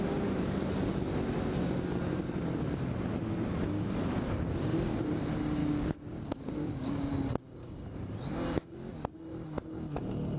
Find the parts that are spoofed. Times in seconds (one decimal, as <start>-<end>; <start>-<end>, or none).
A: 5.6-7.1